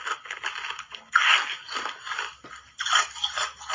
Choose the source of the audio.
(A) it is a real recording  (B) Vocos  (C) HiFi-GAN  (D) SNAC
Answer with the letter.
A